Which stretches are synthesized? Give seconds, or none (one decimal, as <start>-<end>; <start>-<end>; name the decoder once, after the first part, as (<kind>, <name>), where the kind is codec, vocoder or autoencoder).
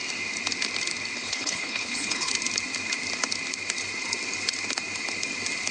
1.2-2.3 (codec, HILCodec)